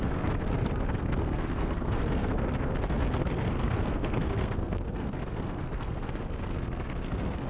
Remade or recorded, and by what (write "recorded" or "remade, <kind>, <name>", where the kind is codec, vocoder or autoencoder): remade, codec, SNAC